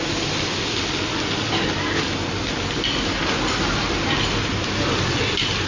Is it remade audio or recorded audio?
recorded